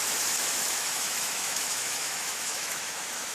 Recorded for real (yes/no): no